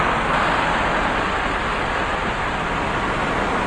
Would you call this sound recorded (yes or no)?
yes